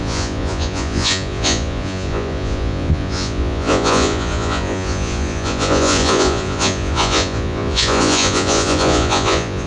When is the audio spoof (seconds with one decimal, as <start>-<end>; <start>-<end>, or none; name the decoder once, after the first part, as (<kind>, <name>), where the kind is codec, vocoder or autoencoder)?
0.0-9.7 (vocoder, Vocos)